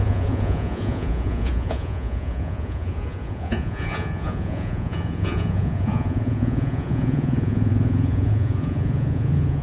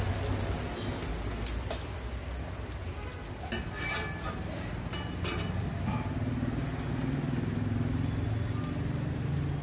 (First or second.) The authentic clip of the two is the second